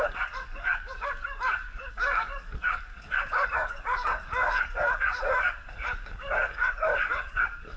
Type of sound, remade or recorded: remade